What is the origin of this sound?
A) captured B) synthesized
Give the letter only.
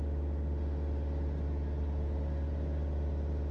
A